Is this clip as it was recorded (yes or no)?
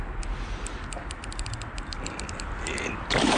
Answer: yes